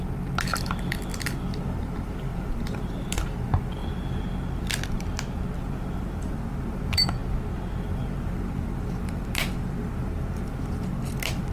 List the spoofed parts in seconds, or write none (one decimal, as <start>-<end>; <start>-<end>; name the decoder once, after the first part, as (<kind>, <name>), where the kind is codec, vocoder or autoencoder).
0.0-3.8 (vocoder, BigVGAN v2); 5.6-7.2; 7.8-11.5

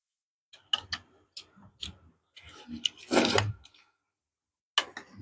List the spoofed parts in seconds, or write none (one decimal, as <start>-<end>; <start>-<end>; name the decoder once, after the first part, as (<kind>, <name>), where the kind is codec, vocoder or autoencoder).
0.0-0.4 (autoencoder, DAC-VAE); 3.5-4.0

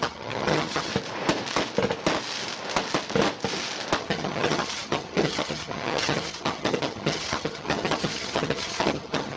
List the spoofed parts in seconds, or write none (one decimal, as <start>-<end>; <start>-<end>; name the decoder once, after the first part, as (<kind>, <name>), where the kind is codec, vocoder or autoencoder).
0.0-0.9 (vocoder, HiFi-GAN); 4.0-9.4

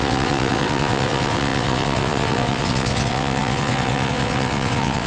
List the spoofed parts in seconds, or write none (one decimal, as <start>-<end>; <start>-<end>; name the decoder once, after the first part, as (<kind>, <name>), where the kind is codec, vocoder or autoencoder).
0.0-5.1 (vocoder, WaveNeXt)

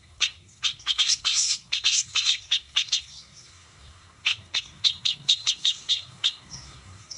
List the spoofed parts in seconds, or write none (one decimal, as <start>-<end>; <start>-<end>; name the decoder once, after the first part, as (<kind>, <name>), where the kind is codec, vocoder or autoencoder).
0.0-7.2 (codec, SNAC)

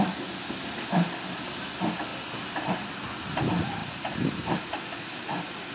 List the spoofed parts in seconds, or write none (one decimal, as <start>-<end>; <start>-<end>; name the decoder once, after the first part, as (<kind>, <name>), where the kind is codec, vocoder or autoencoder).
none

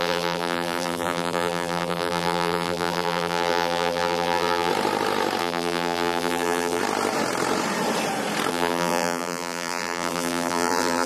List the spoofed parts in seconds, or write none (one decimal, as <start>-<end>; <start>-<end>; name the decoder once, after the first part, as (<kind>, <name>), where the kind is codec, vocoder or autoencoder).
0.0-4.7 (vocoder, BigVGAN v2); 5.4-6.8; 8.5-11.1